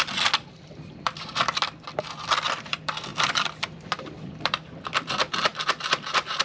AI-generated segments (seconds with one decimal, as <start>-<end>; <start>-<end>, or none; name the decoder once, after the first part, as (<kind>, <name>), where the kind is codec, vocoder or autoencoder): 0.0-6.4 (vocoder, BigVGAN v2)